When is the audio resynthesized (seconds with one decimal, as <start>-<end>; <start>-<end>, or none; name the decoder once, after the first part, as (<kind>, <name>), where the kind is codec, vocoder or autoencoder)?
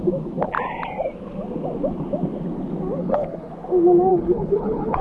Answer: 3.0-3.5 (codec, HILCodec); 4.1-5.0